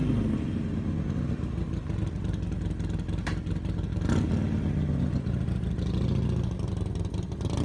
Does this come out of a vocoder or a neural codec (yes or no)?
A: no